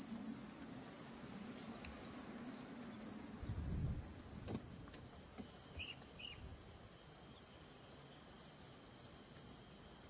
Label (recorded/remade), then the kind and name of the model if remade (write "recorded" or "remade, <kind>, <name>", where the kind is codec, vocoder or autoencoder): recorded